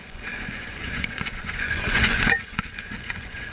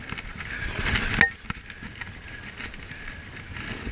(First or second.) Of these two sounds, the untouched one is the second